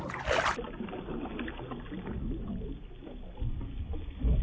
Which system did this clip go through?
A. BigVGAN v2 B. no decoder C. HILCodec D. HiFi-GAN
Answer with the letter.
B